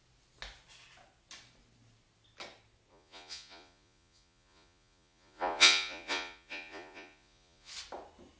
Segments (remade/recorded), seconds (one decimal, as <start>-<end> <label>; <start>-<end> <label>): 0.0-2.9 recorded; 2.9-7.7 remade; 7.7-8.4 recorded